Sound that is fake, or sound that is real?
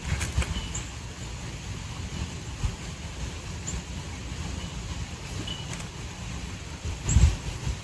real